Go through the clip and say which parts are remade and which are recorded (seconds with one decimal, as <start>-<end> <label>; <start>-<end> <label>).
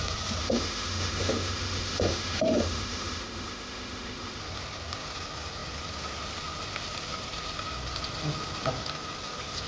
0.0-0.4 recorded; 0.4-4.4 remade; 4.4-9.7 recorded